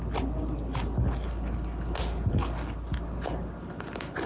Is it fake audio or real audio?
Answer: real